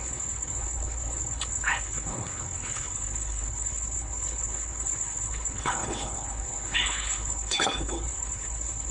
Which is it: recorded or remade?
remade